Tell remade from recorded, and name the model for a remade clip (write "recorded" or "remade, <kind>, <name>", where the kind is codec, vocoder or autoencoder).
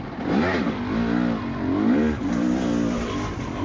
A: recorded